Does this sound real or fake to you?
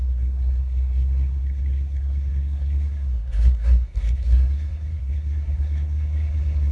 fake